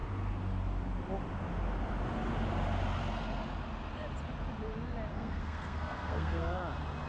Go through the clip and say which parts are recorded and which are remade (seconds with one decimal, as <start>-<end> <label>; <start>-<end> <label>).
0.0-5.1 recorded; 5.1-6.6 remade; 6.6-7.1 recorded